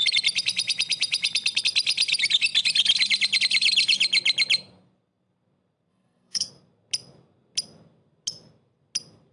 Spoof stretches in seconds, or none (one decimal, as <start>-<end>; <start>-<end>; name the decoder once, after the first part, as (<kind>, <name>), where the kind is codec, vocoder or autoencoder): 5.9-6.5 (codec, SNAC)